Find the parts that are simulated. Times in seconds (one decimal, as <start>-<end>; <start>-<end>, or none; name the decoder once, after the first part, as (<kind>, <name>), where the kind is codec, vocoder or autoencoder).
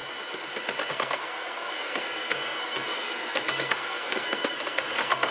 0.9-5.3 (codec, SNAC)